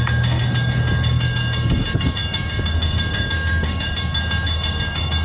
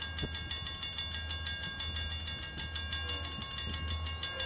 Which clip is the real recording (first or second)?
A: second